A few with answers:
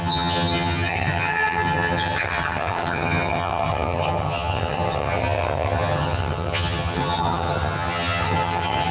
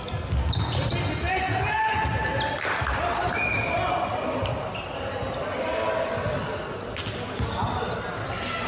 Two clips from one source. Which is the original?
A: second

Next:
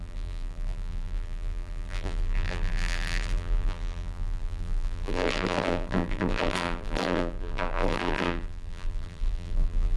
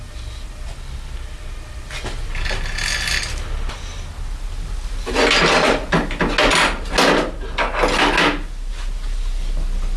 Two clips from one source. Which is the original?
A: second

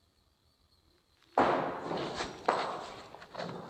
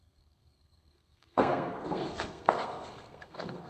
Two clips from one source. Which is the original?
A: first